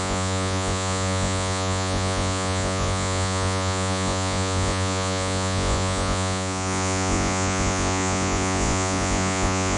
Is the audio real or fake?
fake